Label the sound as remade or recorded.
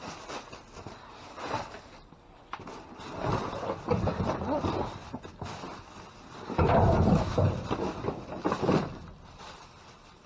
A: remade